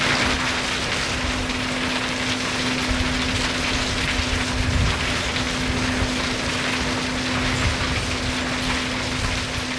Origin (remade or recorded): recorded